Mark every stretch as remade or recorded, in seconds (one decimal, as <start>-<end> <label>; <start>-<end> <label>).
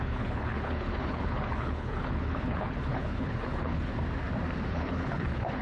0.0-3.9 remade; 3.9-4.7 recorded; 4.7-5.6 remade